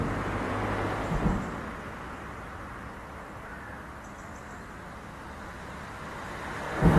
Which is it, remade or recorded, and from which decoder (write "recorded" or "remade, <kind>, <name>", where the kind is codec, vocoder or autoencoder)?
recorded